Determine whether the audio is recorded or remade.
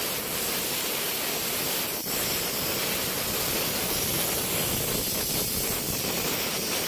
recorded